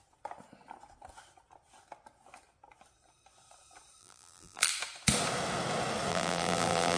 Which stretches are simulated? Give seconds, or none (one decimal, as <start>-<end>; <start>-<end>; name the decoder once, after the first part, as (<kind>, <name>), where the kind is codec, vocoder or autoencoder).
4.0-4.7 (vocoder, BigVGAN v2); 6.1-7.0